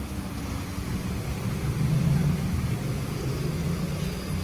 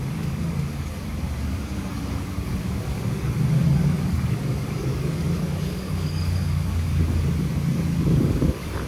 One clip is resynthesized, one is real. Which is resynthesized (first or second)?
second